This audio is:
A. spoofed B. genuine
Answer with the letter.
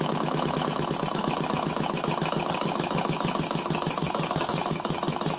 A